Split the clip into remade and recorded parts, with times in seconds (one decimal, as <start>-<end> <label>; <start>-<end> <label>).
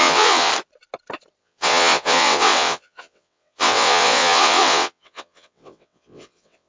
0.0-0.5 remade; 0.5-1.4 recorded; 1.4-6.7 remade